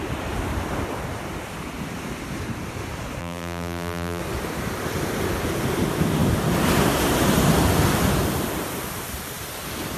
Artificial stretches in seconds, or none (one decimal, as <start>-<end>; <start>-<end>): 3.2-4.2